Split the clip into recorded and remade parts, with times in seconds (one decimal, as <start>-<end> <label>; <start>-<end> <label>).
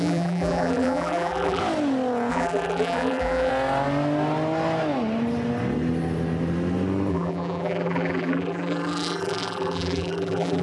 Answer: 0.0-1.6 remade; 1.6-2.3 recorded; 2.3-3.5 remade; 3.5-7.1 recorded; 7.1-10.6 remade